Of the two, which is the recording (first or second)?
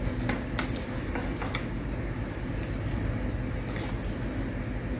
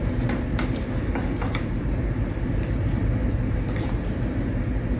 first